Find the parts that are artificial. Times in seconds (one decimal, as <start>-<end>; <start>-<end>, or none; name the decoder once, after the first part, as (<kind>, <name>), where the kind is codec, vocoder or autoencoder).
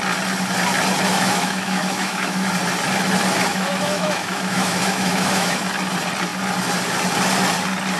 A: 1.1-2.5 (autoencoder, DAC-VAE); 3.5-5.6